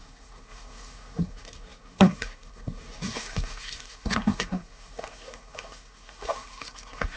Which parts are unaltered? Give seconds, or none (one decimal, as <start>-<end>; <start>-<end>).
none